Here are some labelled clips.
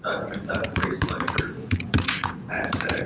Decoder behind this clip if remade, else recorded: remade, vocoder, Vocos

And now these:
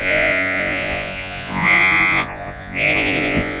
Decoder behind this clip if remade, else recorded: remade, vocoder, Vocos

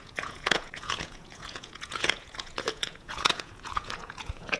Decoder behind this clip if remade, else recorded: remade, vocoder, Vocos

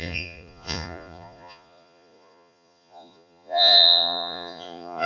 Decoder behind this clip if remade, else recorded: remade, vocoder, Vocos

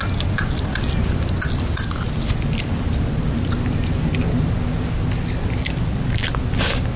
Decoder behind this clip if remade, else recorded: recorded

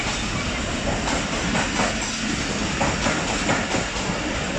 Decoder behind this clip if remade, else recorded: recorded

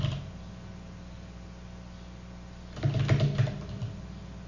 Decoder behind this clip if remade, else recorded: recorded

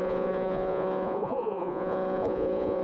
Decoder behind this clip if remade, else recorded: remade, vocoder, Vocos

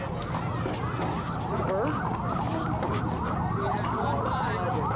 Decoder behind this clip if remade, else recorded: recorded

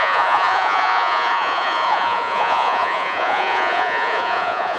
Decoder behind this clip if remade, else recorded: remade, vocoder, Vocos